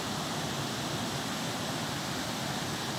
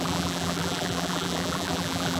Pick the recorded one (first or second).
first